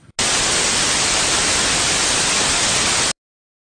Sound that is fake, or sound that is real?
real